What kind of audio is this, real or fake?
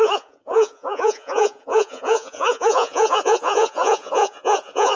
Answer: fake